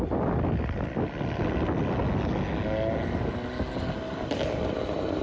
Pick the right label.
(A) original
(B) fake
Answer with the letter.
A